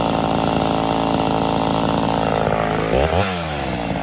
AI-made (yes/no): no